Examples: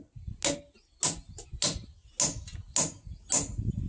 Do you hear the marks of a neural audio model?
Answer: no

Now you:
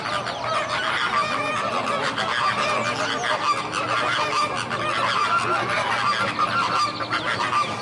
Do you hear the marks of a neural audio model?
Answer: no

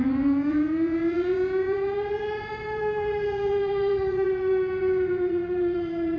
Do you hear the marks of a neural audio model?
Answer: yes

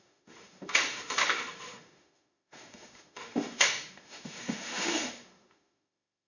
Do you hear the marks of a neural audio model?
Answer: yes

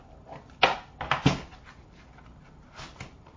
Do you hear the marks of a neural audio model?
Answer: no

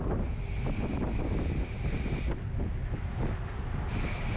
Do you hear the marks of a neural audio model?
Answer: no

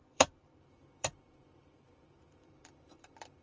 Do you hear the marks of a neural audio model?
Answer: yes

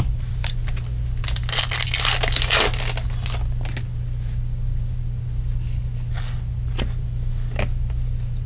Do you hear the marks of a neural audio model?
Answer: no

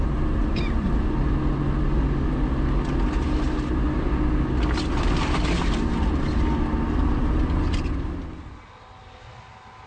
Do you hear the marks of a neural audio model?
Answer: no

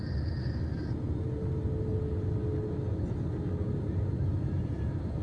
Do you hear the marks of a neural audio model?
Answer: no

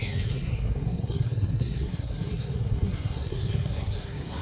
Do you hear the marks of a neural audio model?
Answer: yes